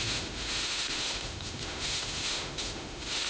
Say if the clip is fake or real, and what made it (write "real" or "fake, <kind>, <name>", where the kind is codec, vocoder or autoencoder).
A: fake, autoencoder, DAC-VAE